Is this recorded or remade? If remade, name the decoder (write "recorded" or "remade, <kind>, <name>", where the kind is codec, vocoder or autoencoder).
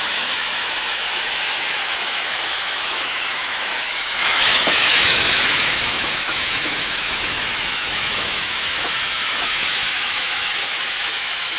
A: remade, autoencoder, DAC-VAE